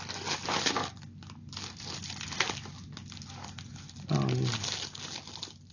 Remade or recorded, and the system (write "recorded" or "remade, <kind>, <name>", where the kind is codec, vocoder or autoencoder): recorded